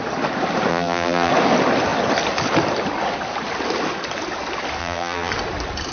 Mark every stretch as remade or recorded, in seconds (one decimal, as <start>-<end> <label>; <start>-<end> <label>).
0.0-0.7 recorded; 0.7-1.3 remade; 1.3-4.8 recorded; 4.8-5.3 remade; 5.3-5.9 recorded